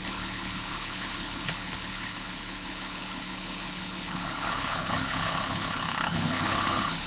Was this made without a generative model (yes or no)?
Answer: no